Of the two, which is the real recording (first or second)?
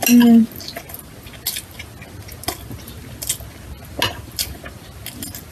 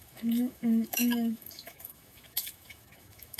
first